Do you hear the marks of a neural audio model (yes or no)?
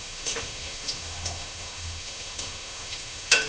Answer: yes